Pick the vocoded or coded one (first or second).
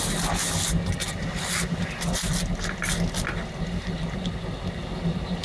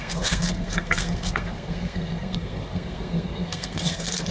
second